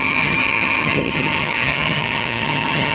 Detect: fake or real fake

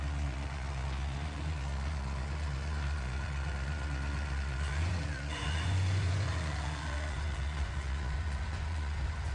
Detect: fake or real fake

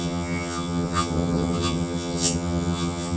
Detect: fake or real fake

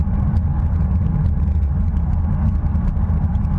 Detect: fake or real real